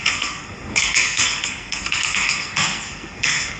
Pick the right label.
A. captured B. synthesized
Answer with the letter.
B